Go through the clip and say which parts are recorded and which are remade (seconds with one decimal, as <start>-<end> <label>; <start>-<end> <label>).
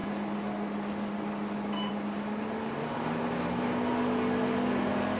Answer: 0.0-5.2 recorded